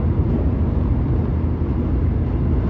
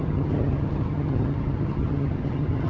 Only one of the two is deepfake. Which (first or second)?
second